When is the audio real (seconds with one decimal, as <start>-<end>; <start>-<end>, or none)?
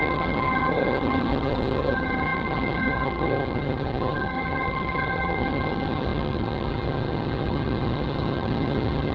none